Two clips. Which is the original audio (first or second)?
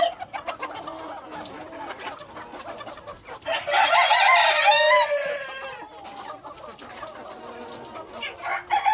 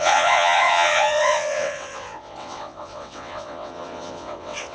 first